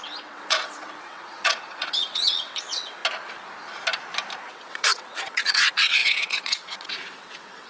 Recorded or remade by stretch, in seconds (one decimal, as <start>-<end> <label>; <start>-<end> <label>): 0.0-3.0 remade; 3.0-4.4 recorded; 4.4-7.7 remade